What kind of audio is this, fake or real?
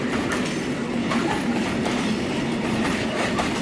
fake